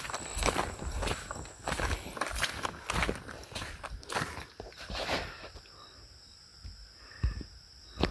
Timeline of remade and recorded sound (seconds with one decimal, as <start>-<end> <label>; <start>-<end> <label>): 0.0-8.1 recorded